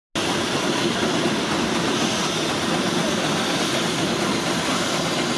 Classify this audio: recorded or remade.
recorded